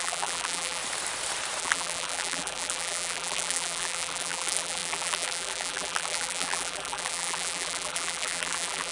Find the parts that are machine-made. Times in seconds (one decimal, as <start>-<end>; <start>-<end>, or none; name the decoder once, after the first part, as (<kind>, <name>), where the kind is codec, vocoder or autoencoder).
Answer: 0.0-0.8 (vocoder, BigVGAN v2); 1.6-8.9